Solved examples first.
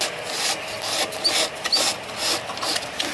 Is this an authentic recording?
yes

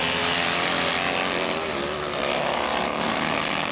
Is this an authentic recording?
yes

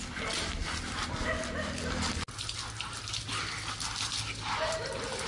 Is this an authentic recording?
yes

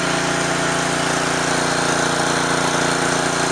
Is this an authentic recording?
yes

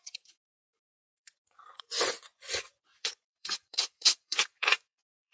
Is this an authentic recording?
no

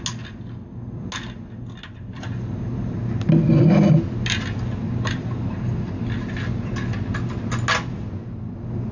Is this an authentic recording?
yes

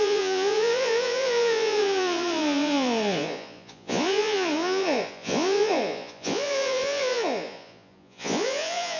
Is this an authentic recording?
no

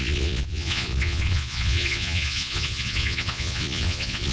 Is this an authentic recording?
no